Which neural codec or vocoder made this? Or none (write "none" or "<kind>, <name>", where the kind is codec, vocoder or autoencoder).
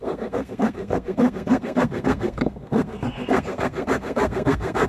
codec, SNAC